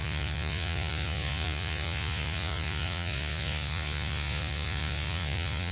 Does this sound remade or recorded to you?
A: remade